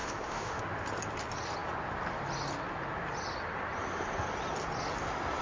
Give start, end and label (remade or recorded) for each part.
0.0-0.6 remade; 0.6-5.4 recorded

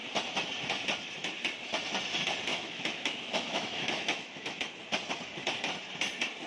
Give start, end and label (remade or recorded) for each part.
0.0-2.5 recorded; 2.5-4.6 remade; 4.6-6.5 recorded

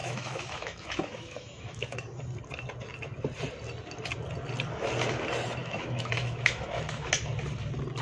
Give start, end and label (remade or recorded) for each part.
0.0-2.0 remade; 2.0-5.6 recorded; 5.6-7.1 remade; 7.1-8.0 recorded

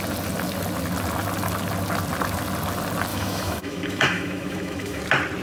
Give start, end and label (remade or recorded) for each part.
0.0-3.1 recorded; 3.1-5.0 remade; 5.0-5.4 recorded